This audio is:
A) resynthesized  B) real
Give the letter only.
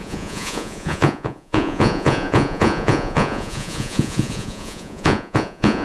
A